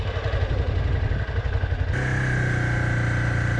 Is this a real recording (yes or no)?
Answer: yes